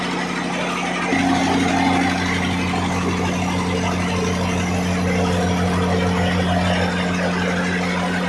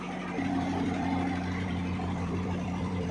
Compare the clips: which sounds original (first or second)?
first